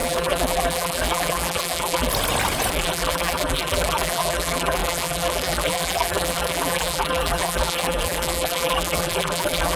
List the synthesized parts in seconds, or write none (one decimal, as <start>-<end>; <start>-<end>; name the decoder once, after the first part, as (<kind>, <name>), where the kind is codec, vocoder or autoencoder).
0.0-2.1 (vocoder, BigVGAN v2); 2.7-9.8